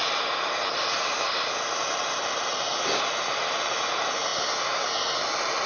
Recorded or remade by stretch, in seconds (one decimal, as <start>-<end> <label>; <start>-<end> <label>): 0.0-5.7 recorded